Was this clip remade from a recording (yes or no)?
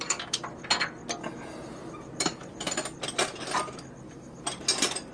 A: no